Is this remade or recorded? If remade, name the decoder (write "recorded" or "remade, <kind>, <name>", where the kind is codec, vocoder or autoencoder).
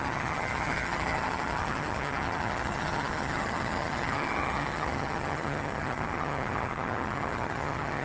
remade, vocoder, HiFi-GAN